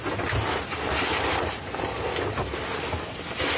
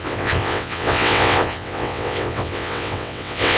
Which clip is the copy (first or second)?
second